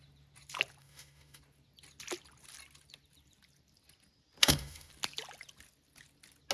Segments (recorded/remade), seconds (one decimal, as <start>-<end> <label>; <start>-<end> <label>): 0.0-0.8 recorded; 0.8-1.4 remade; 1.4-4.4 recorded; 4.4-4.9 remade; 4.9-6.5 recorded